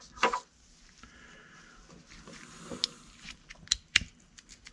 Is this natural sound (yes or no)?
yes